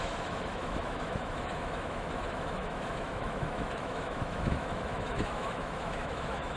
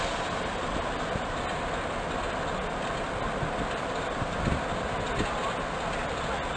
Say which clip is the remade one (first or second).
first